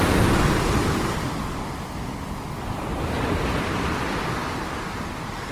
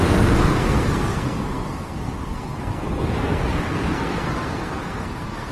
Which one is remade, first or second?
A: second